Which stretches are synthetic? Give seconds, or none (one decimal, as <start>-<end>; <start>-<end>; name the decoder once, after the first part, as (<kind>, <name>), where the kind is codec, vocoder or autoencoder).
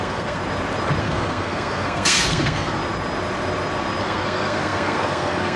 0.0-0.4 (codec, SNAC); 1.0-2.8; 4.0-5.6